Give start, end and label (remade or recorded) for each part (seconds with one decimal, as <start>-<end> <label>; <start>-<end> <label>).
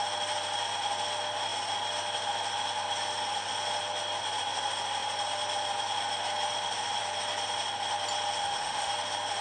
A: 0.0-8.4 recorded; 8.4-8.9 remade; 8.9-9.4 recorded